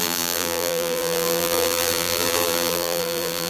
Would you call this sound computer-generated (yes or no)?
yes